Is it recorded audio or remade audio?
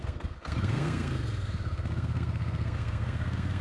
remade